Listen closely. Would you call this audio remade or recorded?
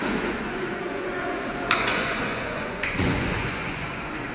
remade